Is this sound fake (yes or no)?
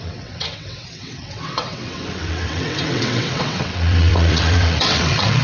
yes